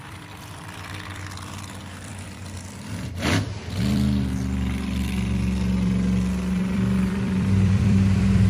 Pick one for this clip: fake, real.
fake